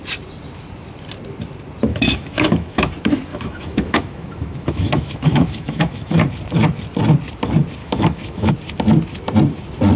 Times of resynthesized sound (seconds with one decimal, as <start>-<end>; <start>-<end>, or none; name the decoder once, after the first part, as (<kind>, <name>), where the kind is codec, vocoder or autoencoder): 1.9-2.9 (autoencoder, DAC-VAE); 3.3-6.2; 7.8-8.5